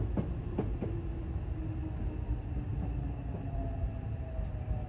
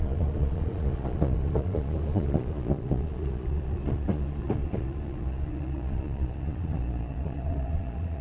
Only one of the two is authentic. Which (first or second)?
first